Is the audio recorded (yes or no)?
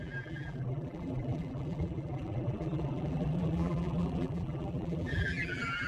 no